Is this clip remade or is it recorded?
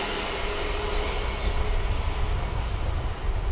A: recorded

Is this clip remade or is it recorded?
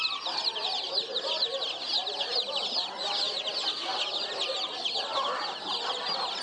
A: recorded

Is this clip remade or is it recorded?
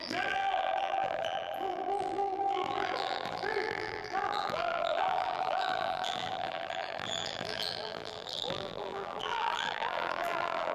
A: remade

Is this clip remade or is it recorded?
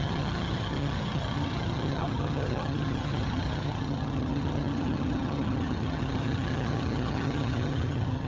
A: remade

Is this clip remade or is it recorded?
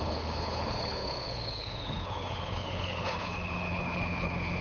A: remade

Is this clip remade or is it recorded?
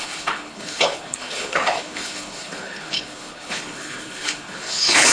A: remade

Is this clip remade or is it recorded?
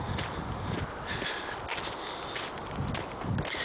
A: recorded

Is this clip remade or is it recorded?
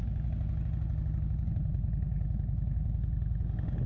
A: recorded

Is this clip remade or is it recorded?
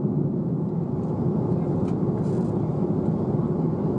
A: recorded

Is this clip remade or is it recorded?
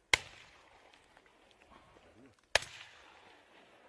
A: recorded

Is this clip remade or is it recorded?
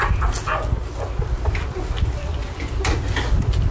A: recorded